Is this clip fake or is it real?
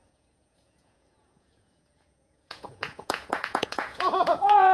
fake